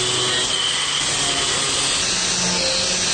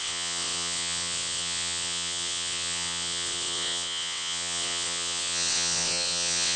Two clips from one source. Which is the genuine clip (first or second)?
first